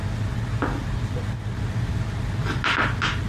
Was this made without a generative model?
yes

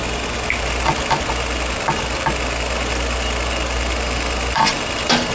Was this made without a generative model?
yes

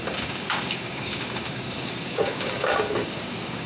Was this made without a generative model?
no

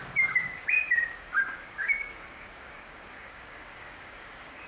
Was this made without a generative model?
no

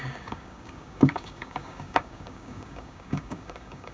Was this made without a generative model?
no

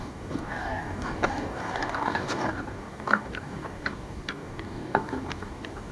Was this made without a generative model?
no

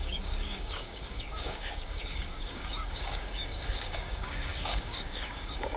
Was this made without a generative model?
no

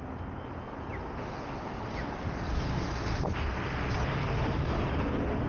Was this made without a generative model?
yes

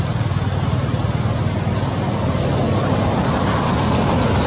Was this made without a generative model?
yes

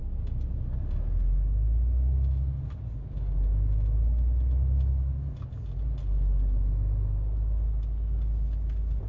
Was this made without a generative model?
yes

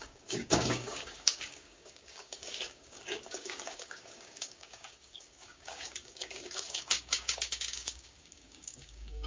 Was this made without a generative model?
no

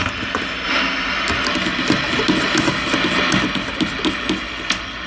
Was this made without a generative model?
yes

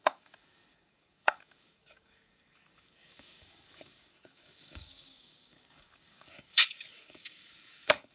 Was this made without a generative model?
no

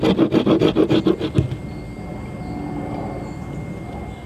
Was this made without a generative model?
yes